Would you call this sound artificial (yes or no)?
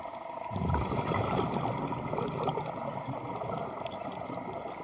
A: no